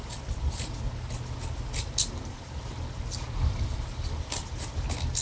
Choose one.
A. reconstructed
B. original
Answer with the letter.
B